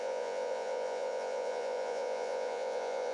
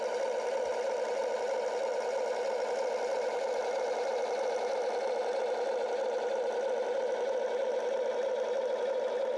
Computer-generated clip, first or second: first